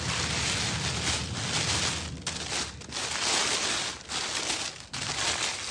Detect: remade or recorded recorded